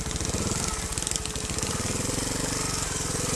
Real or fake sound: real